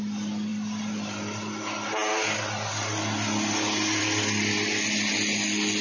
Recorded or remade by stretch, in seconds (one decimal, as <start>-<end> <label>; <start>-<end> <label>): 0.0-5.8 recorded